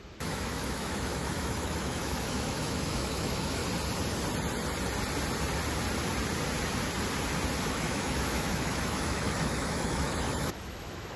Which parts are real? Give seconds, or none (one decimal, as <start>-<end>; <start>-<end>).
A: 3.6-7.7

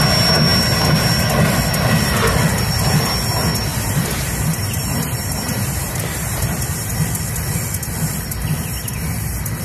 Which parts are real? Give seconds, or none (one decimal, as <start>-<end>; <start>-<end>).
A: 0.0-3.7; 6.9-8.7

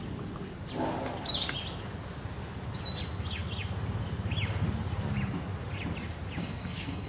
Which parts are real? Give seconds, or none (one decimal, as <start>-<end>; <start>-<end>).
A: 0.0-6.4

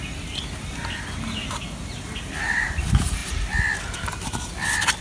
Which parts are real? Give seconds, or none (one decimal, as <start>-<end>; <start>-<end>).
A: 0.0-5.0

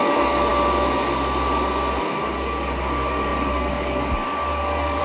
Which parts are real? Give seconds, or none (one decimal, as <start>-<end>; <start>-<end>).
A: 0.5-2.2